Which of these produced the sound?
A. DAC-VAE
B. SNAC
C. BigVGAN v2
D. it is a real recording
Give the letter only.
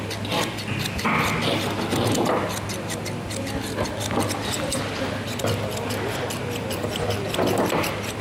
D